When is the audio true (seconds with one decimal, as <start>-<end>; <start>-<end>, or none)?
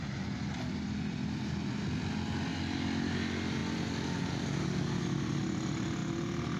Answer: 0.0-6.6